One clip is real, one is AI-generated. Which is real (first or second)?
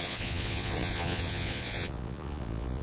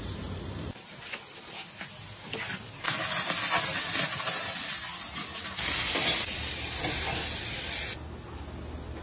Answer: second